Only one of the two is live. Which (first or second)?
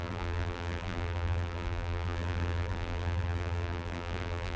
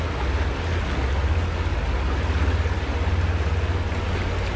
second